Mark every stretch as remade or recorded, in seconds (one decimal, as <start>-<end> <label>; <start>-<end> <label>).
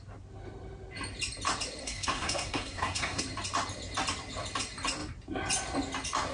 0.0-1.8 recorded; 1.8-3.2 remade; 3.2-6.3 recorded